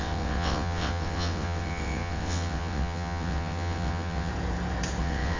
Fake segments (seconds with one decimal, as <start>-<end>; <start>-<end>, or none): 0.0-4.3; 5.0-5.4

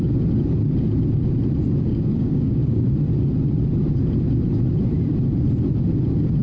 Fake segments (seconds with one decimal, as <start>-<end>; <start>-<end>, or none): 1.9-2.9

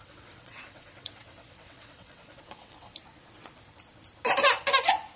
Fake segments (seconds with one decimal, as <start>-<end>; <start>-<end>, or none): 0.0-2.9

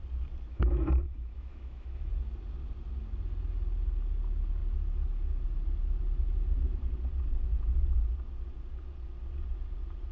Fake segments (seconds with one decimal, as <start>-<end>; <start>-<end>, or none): 0.5-2.1

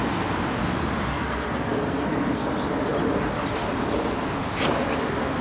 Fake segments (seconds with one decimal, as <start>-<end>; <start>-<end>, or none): 1.0-2.5

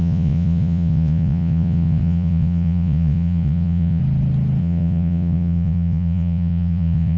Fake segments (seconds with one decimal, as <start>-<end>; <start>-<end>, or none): 0.0-4.0; 4.6-7.2

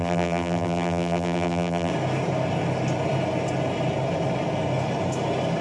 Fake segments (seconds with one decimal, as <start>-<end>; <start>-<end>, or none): 0.0-1.9

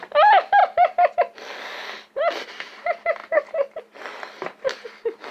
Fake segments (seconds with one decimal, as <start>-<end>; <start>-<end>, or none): 0.6-1.2